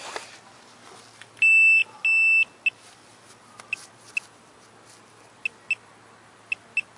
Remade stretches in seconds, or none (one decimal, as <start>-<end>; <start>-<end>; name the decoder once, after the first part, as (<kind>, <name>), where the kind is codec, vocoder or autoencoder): none